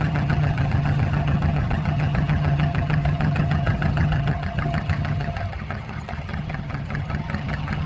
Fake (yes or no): yes